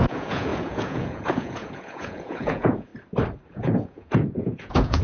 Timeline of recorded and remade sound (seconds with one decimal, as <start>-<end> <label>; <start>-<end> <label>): 0.0-2.9 remade; 2.9-3.5 recorded; 3.5-5.0 remade